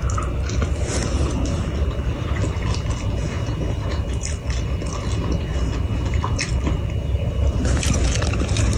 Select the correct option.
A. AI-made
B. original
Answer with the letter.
B